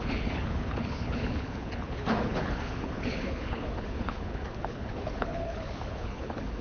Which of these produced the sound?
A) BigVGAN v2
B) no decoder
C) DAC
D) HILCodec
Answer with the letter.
D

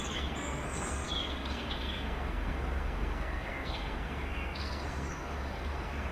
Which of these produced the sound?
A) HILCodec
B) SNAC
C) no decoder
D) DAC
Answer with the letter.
B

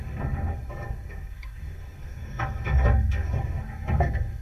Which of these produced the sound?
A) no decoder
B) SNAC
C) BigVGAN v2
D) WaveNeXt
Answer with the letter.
B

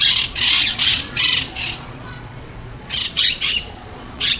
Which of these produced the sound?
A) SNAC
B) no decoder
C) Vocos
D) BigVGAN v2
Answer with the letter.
C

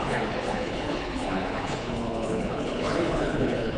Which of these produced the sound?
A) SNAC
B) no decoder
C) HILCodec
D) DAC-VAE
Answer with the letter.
C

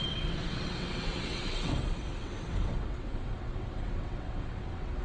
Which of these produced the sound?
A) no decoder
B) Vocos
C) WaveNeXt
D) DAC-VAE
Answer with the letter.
C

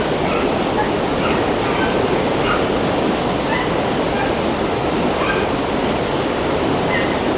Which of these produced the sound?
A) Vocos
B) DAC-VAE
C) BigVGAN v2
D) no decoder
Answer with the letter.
D